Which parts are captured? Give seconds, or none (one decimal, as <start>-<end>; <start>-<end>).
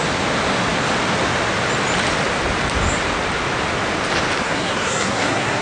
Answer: 0.0-4.4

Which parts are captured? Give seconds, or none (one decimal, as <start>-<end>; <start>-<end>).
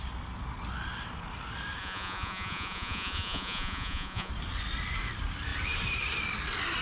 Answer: 0.0-1.8; 4.3-6.8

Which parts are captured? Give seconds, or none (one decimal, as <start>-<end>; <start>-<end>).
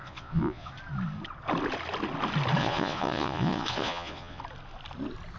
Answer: 0.7-2.6; 4.4-5.4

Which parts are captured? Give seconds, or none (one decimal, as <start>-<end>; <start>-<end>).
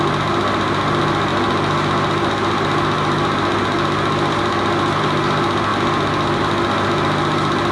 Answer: 0.0-7.7